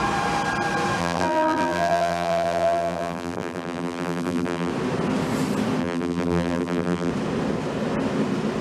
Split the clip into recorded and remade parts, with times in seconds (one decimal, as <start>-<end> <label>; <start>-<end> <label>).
0.0-1.0 recorded; 1.0-4.7 remade; 4.7-5.8 recorded; 5.8-7.1 remade; 7.1-8.6 recorded